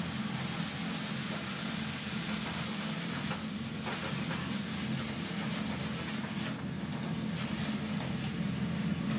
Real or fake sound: real